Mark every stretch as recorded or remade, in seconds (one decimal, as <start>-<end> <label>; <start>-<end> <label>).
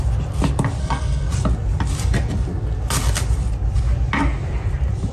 0.0-0.8 recorded; 0.8-1.3 remade; 1.3-5.1 recorded